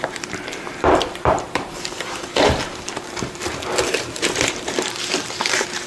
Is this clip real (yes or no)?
no